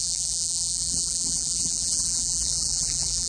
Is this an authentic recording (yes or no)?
no